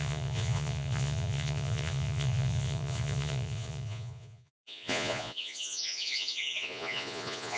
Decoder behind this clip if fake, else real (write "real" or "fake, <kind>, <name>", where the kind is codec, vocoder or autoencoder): fake, vocoder, Vocos